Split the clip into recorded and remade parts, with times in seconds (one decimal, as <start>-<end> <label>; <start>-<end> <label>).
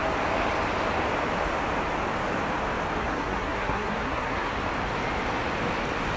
0.0-3.0 recorded; 3.0-4.5 remade; 4.5-6.2 recorded